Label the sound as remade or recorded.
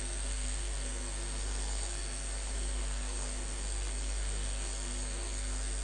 remade